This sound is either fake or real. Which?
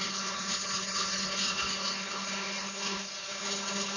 fake